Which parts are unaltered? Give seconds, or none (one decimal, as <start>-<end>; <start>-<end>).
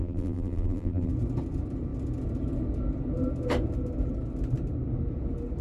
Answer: 1.1-5.6